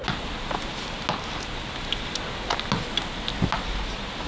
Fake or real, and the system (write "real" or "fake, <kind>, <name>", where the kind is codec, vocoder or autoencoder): real